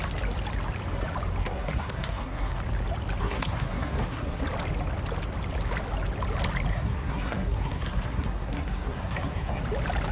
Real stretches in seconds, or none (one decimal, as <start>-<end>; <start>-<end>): 0.0-1.4; 2.6-3.2; 4.4-6.7; 9.6-10.1